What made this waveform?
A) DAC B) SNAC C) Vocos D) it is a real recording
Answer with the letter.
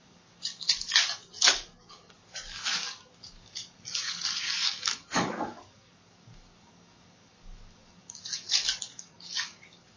A